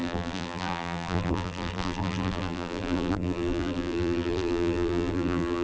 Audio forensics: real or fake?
fake